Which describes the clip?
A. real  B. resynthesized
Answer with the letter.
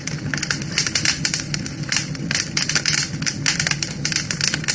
A